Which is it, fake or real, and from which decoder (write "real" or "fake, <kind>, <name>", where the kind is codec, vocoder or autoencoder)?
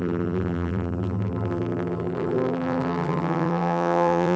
fake, vocoder, BigVGAN v2